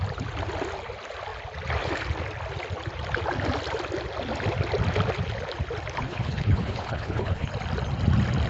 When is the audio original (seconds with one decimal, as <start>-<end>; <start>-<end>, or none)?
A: 0.0-6.0; 7.5-8.5